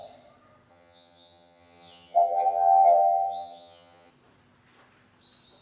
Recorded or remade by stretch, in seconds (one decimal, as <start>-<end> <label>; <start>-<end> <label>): 0.0-0.7 recorded; 0.7-4.1 remade; 4.1-5.6 recorded